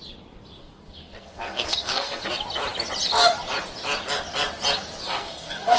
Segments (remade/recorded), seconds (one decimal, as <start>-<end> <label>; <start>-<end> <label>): 0.0-0.6 recorded; 0.6-2.3 remade; 2.3-5.0 recorded; 5.0-5.8 remade